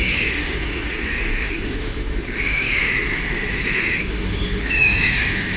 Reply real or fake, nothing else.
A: fake